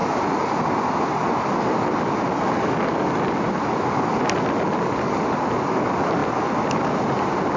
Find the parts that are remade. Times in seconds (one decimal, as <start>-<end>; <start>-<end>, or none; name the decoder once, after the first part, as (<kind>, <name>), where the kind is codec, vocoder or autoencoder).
none